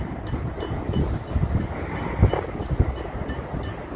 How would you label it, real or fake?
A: real